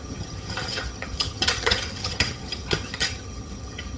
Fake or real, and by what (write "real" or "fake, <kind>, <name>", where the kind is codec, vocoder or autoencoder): fake, vocoder, HiFi-GAN